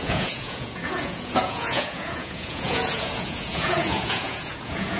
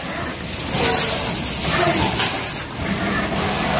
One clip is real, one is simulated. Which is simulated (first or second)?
first